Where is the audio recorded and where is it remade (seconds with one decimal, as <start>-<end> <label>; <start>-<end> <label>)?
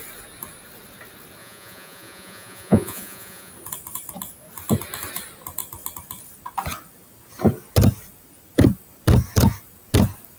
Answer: 0.0-1.4 recorded; 1.4-3.5 remade; 3.5-10.4 recorded